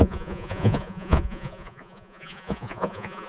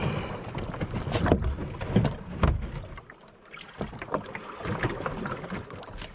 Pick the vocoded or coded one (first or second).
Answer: first